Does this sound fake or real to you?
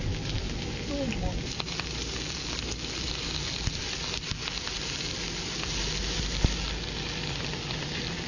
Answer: real